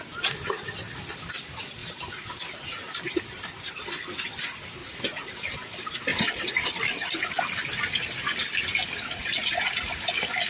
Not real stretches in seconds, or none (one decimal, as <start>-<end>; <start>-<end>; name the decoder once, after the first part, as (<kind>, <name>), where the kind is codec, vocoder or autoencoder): 4.8-5.3 (vocoder, Vocos); 6.1-7.3